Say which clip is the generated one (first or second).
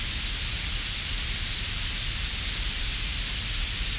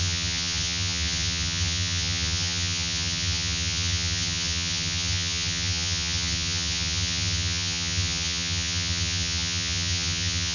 second